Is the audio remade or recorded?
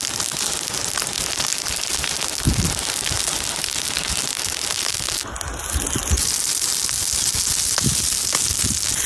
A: recorded